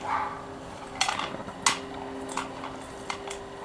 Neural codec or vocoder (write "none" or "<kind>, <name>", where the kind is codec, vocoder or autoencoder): none